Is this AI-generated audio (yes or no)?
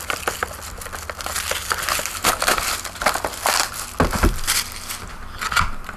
no